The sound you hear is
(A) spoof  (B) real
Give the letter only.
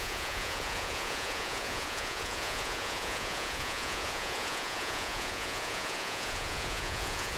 A